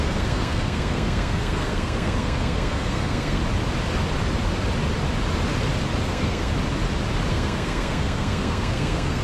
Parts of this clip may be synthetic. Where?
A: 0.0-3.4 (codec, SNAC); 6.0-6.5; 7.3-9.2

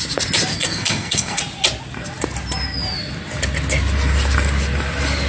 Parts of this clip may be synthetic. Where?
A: 0.5-1.4 (codec, SNAC)

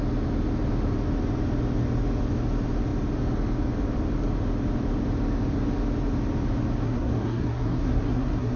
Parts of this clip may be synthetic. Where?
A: 6.8-8.6 (codec, SNAC)

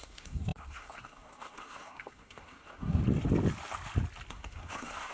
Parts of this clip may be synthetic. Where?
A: 0.0-3.0 (codec, SNAC); 4.3-5.1

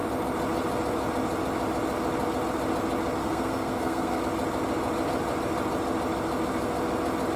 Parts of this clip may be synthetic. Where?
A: 3.2-4.2 (codec, SNAC)

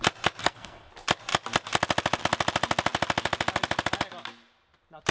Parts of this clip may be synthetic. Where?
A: 0.4-0.9 (codec, SNAC)

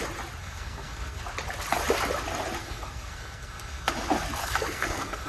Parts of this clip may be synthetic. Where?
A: 0.4-1.2 (codec, SNAC); 2.6-3.9; 4.4-5.3